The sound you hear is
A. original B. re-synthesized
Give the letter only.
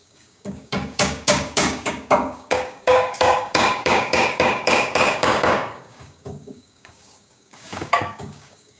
B